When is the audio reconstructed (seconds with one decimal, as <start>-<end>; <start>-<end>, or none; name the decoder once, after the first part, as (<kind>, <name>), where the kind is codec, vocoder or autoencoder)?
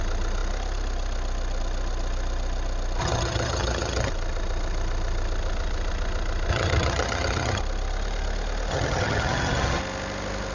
3.0-4.1 (vocoder, HiFi-GAN); 6.5-7.6; 8.7-9.8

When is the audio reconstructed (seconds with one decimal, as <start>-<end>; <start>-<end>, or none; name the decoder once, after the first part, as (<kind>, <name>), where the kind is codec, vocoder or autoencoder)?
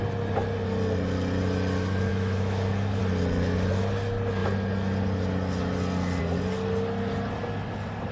2.1-3.0 (autoencoder, DAC-VAE)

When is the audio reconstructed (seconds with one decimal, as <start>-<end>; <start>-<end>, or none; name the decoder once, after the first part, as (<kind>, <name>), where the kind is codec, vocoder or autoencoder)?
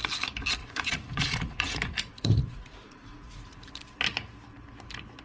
0.6-3.7 (vocoder, Vocos)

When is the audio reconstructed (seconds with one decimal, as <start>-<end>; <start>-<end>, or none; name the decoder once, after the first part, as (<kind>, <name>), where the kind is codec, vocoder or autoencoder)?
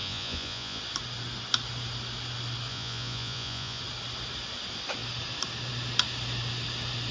0.0-0.8 (vocoder, Vocos); 2.7-3.8